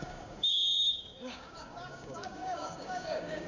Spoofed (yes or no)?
yes